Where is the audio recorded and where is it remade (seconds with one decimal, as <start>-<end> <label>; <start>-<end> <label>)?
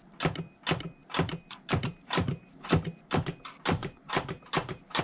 0.0-1.0 recorded; 1.0-2.7 remade; 2.7-3.8 recorded; 3.8-5.0 remade